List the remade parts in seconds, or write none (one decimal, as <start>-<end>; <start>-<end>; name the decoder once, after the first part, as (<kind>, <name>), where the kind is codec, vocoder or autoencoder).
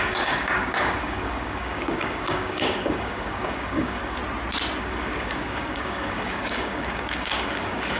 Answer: 0.0-4.2 (codec, DAC); 4.8-8.0